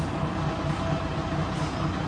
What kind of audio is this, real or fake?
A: real